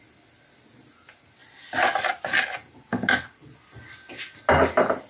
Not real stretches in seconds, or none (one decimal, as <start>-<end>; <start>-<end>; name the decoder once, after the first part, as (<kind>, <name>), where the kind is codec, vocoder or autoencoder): none